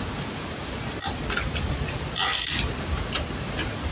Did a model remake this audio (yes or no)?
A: no